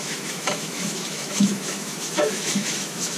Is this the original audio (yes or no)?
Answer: no